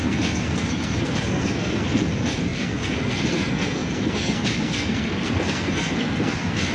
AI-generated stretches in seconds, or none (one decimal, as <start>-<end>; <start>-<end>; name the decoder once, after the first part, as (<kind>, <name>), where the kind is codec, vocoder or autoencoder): 0.0-6.7 (codec, SNAC)